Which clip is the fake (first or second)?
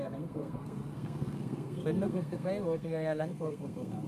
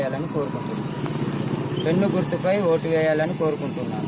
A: first